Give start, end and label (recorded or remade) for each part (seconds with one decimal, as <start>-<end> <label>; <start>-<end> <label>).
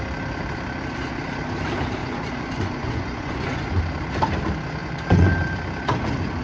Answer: 0.0-2.0 recorded; 2.0-3.8 remade; 3.8-4.8 recorded; 4.8-5.3 remade; 5.3-6.4 recorded